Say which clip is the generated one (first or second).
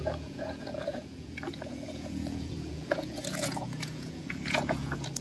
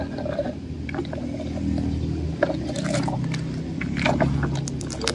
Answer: first